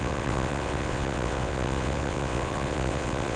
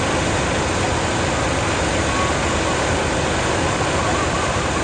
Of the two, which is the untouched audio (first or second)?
second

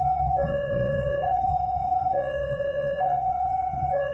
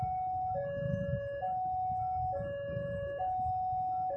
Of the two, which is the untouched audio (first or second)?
second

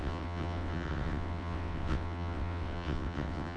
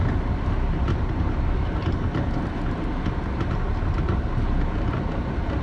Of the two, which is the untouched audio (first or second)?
second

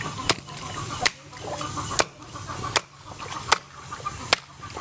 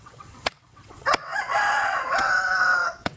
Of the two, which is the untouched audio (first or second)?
first